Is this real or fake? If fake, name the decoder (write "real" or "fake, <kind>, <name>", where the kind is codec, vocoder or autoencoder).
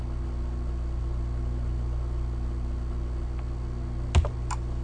real